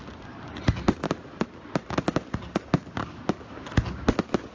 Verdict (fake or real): real